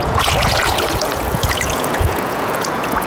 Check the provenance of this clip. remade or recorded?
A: remade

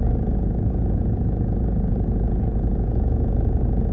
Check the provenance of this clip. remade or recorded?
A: remade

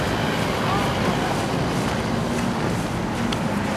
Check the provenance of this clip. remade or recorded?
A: recorded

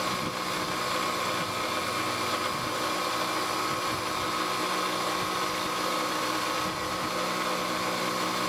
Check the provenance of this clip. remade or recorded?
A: recorded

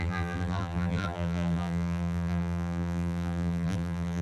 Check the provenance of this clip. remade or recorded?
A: remade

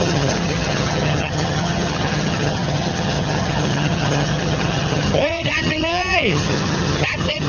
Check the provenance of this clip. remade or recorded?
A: remade